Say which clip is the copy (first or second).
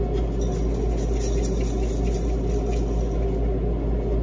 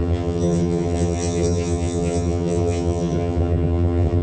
second